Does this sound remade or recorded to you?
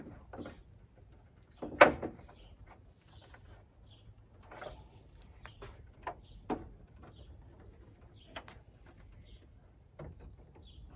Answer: recorded